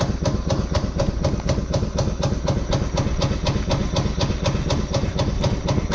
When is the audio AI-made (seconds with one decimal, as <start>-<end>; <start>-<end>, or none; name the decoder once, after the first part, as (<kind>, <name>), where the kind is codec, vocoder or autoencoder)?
none